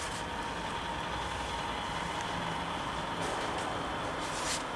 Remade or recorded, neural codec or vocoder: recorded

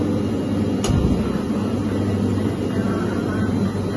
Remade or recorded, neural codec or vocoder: recorded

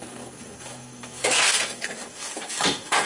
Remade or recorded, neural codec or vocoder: remade, codec, SNAC